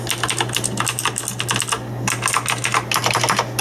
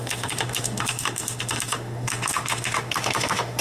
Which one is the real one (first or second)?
first